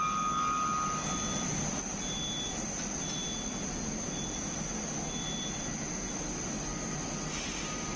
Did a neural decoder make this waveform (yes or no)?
no